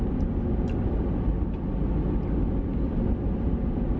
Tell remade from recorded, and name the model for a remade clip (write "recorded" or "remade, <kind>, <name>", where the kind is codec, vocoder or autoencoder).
recorded